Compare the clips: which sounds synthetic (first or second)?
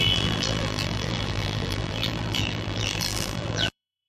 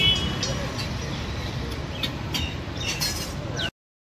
first